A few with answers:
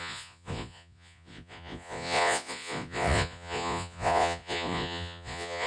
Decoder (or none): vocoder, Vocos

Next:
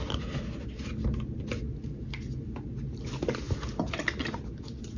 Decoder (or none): none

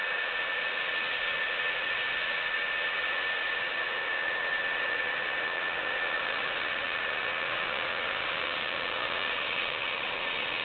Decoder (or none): vocoder, Vocos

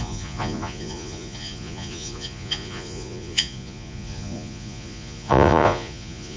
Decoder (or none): vocoder, Vocos